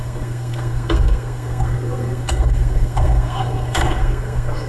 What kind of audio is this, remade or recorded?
remade